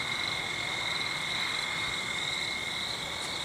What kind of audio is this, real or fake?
real